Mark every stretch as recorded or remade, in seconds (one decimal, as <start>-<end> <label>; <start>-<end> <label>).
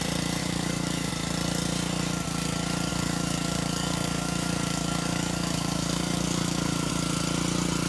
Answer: 0.0-0.4 recorded; 0.4-1.1 remade; 1.1-2.9 recorded; 2.9-6.9 remade; 6.9-7.9 recorded